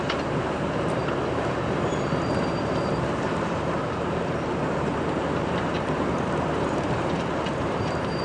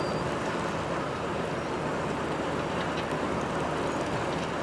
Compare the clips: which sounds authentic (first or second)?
second